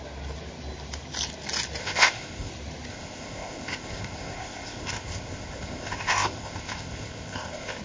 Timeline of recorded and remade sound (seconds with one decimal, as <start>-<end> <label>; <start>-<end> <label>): 0.0-1.8 recorded; 1.8-2.5 remade; 2.5-2.9 recorded; 2.9-7.8 remade